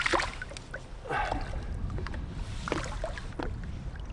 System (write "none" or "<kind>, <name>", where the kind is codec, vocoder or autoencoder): none